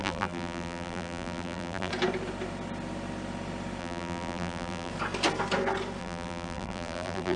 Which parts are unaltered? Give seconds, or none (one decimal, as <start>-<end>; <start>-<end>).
1.9-3.8; 4.9-6.0